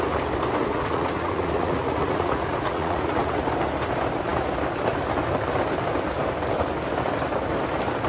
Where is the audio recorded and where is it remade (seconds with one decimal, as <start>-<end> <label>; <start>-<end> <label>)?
0.0-0.7 recorded; 0.7-3.4 remade; 3.4-8.1 recorded